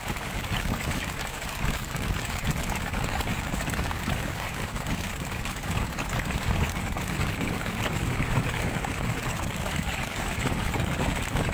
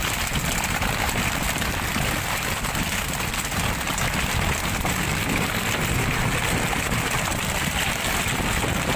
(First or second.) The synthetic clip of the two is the first